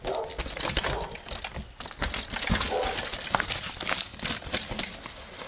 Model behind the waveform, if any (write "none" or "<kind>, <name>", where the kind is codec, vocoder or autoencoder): none